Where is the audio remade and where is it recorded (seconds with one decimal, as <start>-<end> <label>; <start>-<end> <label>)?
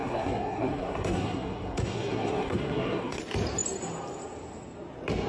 0.0-3.2 remade; 3.2-5.3 recorded